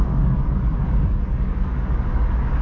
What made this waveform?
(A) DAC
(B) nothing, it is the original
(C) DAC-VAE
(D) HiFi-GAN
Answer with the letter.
A